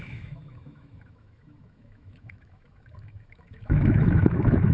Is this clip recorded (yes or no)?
no